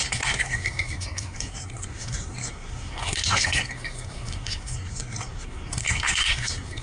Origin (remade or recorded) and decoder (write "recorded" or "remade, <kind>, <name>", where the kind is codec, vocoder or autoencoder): remade, codec, SNAC